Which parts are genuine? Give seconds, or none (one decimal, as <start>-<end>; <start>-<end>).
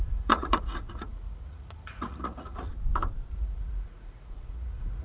2.7-3.3